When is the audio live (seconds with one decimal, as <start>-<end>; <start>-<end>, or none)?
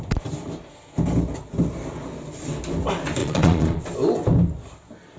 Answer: 0.0-3.2; 3.8-5.2